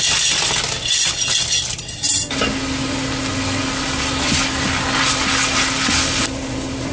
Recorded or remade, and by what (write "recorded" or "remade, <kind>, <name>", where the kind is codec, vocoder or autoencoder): recorded